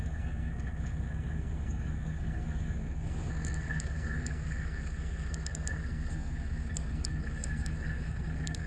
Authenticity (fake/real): fake